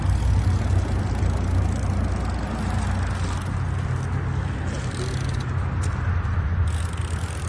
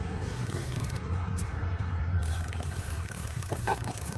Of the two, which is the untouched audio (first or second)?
first